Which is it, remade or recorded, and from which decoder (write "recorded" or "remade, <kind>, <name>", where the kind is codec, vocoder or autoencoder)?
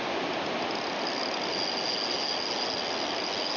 recorded